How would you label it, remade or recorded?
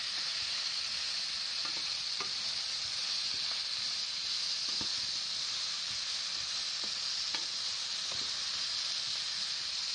recorded